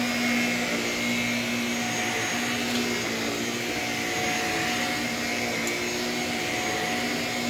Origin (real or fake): real